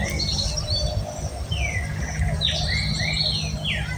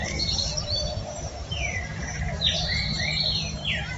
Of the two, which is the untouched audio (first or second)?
first